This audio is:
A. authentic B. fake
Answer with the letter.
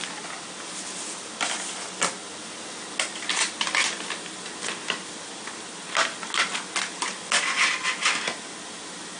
A